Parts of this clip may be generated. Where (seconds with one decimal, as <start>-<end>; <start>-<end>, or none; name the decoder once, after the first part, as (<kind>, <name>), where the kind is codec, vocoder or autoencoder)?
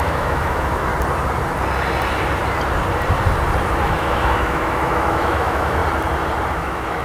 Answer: 0.0-0.9 (autoencoder, DAC-VAE); 3.8-5.8; 6.5-7.0